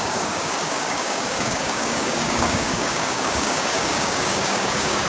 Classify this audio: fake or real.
fake